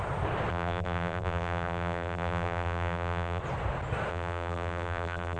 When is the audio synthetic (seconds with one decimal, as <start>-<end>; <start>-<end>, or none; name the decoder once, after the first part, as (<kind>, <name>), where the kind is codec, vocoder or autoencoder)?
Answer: 0.5-3.4 (vocoder, BigVGAN v2); 4.1-5.4